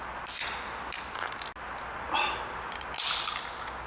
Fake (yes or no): no